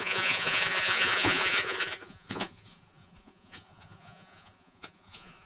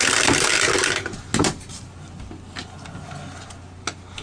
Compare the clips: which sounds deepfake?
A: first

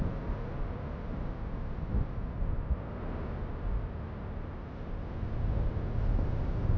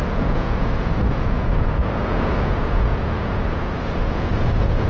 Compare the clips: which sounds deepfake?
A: second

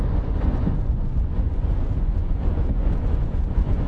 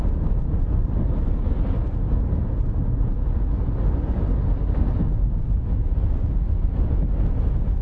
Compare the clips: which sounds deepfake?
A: first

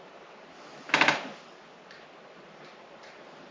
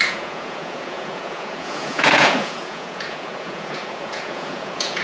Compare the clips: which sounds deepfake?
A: second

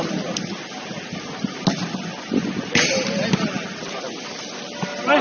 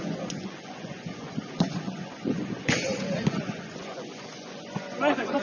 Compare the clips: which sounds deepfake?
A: second